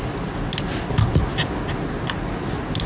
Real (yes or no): yes